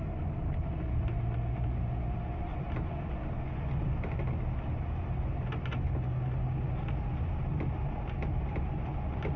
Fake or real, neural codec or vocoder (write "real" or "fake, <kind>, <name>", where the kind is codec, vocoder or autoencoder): real